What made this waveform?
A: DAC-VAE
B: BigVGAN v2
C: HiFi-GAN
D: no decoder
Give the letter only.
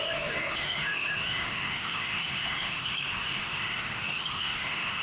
A